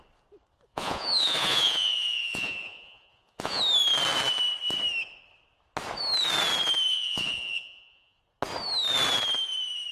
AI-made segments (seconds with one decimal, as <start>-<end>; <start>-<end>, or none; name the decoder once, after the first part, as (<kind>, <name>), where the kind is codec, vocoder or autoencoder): 0.7-3.6 (vocoder, Vocos); 6.9-8.2